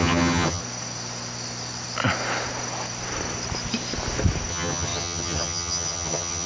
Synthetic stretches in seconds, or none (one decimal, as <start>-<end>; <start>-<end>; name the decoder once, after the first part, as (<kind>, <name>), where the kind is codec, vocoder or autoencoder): 0.0-0.6 (vocoder, HiFi-GAN); 4.5-6.5